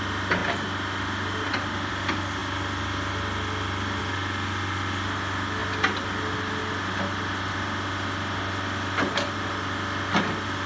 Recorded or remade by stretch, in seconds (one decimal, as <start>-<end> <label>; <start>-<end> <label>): 0.0-10.7 recorded